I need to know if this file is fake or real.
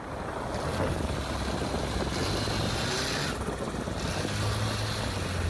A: real